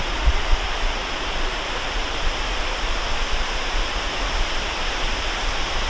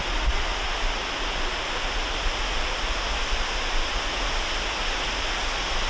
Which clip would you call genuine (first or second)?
second